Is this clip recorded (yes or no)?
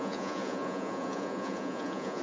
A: no